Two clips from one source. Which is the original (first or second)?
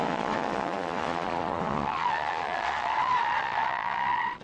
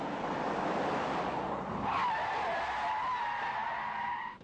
second